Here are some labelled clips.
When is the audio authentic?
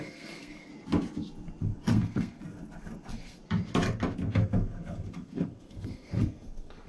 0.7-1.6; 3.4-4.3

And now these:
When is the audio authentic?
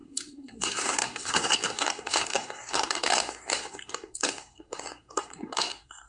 none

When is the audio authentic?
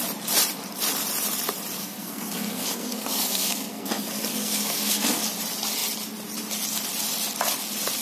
0.0-1.8; 5.2-8.0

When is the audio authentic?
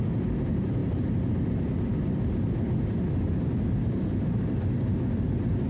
0.0-5.7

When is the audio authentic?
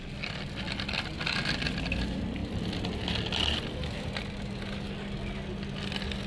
0.0-6.3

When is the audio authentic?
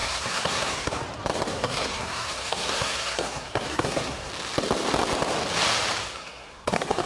1.0-1.5; 4.3-6.0